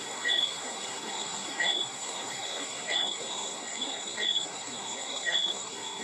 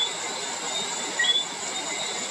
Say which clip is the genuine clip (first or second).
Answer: second